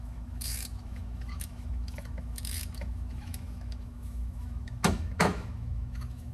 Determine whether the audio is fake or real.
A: fake